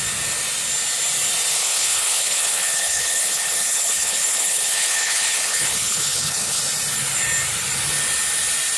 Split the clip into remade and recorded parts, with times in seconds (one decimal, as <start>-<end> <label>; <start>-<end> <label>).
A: 0.0-1.6 recorded; 1.6-6.6 remade; 6.6-8.8 recorded